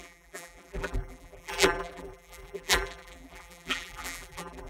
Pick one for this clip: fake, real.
fake